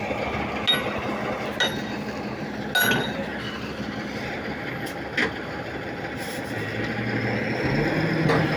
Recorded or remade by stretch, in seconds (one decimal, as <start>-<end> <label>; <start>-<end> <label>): 0.0-8.6 recorded